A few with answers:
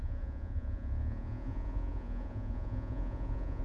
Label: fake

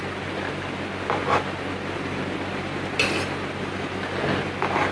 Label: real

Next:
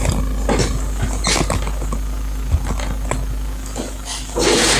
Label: real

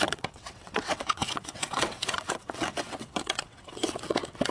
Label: fake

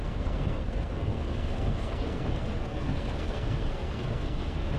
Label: fake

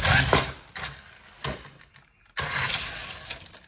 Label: real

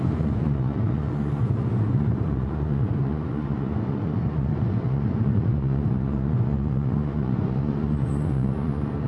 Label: fake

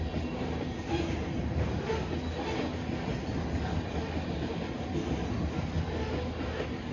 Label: real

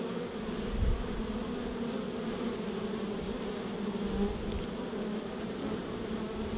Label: real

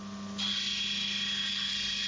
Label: real